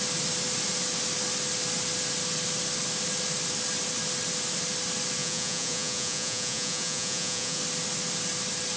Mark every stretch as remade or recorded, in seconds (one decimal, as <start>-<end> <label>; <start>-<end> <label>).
0.0-5.2 recorded; 5.2-7.6 remade; 7.6-8.8 recorded